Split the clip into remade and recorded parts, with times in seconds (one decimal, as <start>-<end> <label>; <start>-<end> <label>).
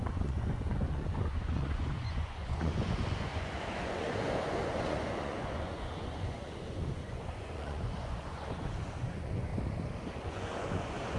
0.0-9.5 remade; 9.5-10.3 recorded; 10.3-11.2 remade